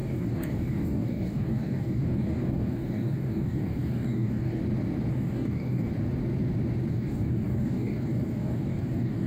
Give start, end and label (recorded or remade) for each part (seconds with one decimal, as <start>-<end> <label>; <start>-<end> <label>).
0.0-4.6 remade; 4.6-5.1 recorded; 5.1-5.9 remade; 5.9-6.9 recorded; 6.9-9.3 remade